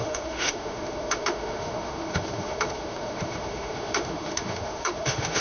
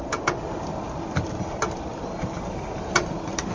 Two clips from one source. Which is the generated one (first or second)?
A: first